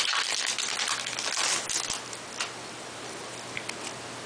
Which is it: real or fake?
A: real